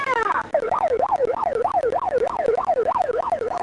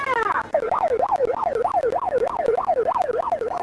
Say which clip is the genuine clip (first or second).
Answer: second